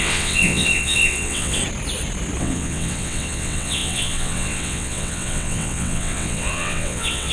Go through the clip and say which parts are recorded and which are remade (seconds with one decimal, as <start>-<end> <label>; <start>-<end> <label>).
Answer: 0.0-1.6 remade; 1.6-2.4 recorded; 2.4-7.3 remade